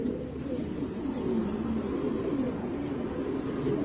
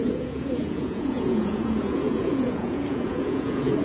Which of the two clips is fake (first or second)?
second